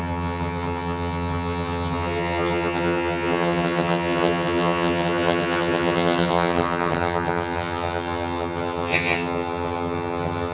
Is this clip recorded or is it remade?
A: remade